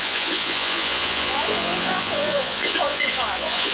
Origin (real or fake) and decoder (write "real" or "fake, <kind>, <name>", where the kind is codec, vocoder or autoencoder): fake, vocoder, Vocos